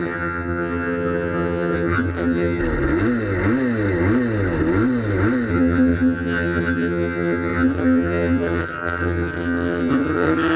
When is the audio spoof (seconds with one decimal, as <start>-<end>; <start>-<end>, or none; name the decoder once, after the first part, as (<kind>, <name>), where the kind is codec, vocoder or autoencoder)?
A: 0.0-2.6 (vocoder, HiFi-GAN); 5.5-10.6